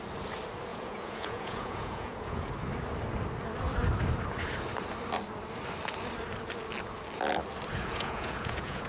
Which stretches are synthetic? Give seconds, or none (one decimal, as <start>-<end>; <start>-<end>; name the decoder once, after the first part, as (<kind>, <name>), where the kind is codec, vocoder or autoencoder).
0.7-2.5 (vocoder, Vocos); 7.7-8.9